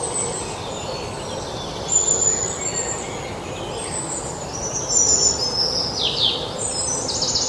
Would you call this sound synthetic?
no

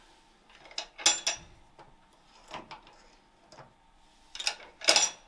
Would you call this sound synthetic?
no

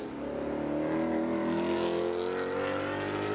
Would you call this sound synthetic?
no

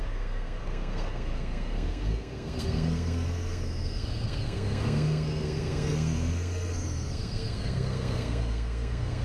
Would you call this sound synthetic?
yes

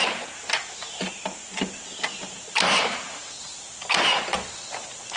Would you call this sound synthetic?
no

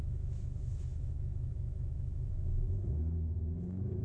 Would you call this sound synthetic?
yes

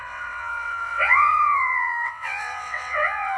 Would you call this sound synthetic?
yes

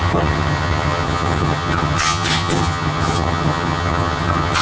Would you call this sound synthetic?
yes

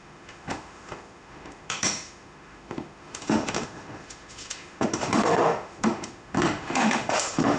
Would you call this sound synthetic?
yes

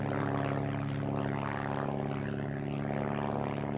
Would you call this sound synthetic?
no